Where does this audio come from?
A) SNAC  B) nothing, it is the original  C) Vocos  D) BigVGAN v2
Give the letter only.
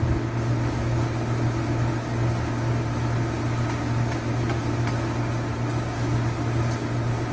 B